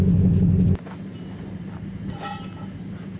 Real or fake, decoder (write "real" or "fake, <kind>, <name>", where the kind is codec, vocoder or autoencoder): real